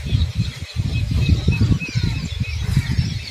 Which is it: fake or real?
real